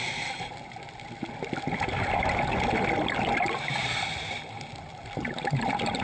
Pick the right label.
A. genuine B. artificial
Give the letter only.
A